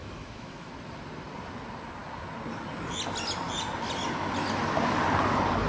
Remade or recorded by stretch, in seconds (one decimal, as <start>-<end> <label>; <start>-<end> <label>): 0.0-0.7 remade; 0.7-5.7 recorded